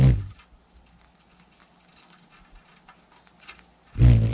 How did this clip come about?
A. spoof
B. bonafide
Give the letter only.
B